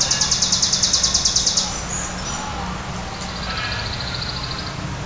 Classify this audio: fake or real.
real